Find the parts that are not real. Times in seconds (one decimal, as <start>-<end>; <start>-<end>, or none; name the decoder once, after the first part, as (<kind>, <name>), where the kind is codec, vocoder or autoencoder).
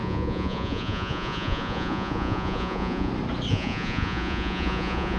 0.0-3.1 (vocoder, Vocos); 3.5-5.2